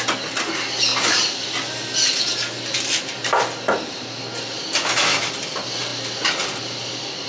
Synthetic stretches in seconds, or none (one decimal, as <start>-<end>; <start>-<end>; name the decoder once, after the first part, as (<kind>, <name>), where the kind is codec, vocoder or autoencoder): none